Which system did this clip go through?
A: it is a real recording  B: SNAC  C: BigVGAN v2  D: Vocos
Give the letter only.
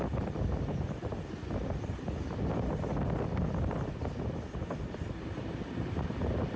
A